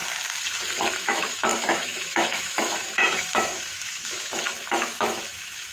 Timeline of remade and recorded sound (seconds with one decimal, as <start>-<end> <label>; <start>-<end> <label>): 0.0-0.9 recorded; 0.9-5.7 remade